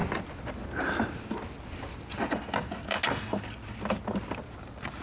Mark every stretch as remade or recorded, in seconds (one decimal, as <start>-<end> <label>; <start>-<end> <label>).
0.0-5.0 recorded